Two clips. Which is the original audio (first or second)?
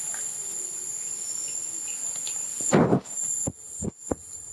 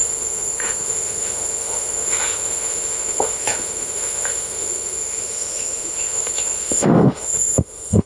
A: first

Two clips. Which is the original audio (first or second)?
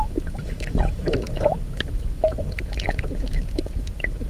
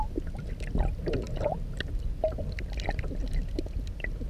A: second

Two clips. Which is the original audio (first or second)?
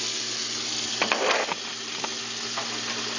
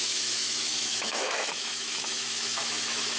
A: first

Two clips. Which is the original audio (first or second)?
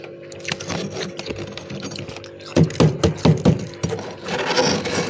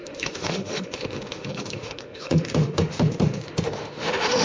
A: first